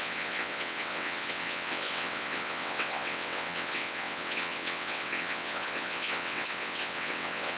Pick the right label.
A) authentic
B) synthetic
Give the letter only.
B